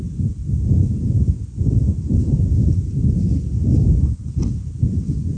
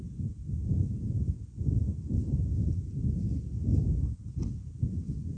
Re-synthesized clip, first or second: first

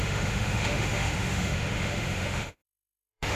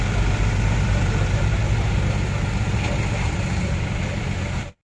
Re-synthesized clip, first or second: first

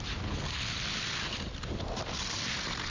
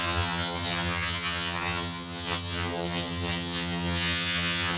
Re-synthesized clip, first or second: second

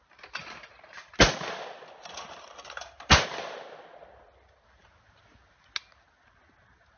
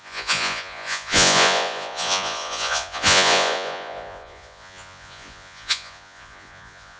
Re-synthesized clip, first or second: second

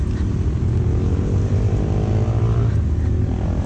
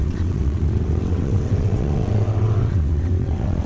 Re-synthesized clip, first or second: second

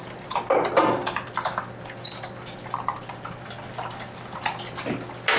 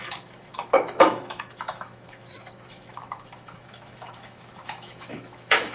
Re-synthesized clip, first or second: second